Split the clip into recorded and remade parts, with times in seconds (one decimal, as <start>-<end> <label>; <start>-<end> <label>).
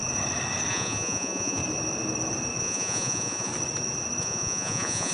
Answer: 0.0-0.7 recorded; 0.7-1.6 remade; 1.6-2.6 recorded; 2.6-3.5 remade; 3.5-4.2 recorded; 4.2-5.1 remade